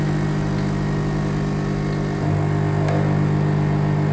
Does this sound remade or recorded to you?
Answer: recorded